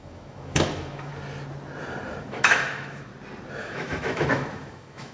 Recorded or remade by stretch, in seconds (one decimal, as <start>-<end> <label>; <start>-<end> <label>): 0.0-1.1 remade; 1.1-2.2 recorded; 2.2-3.1 remade; 3.1-3.6 recorded; 3.6-5.1 remade